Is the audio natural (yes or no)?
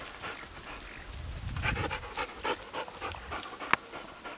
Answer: yes